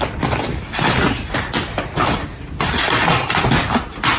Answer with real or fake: real